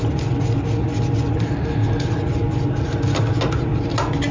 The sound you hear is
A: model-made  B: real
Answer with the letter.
B